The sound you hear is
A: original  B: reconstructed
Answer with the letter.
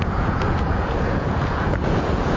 B